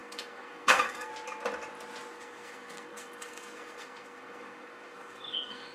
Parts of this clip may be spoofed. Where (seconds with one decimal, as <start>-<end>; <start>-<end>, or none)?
0.0-1.1; 2.1-5.7